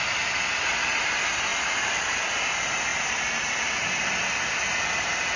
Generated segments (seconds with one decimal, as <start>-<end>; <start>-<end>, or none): none